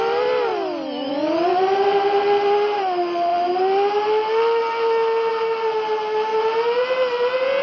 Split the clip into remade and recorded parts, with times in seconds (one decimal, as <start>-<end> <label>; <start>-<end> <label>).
0.0-7.6 recorded